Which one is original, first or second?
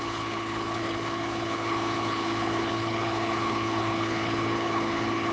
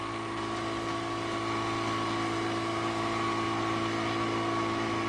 second